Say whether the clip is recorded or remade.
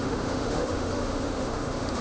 remade